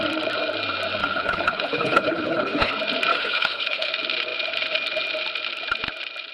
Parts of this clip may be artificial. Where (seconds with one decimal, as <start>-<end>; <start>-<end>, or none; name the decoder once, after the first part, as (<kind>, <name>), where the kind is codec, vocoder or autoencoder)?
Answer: 1.0-2.7 (codec, HILCodec); 3.1-3.9